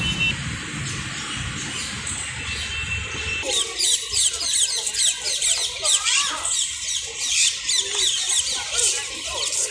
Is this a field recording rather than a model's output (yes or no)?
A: yes